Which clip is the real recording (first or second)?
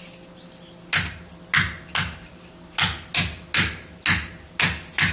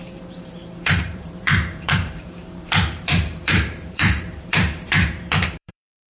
first